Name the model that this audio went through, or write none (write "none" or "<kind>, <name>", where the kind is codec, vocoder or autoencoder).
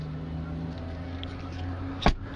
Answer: none